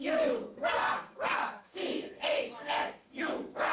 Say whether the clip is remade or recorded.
remade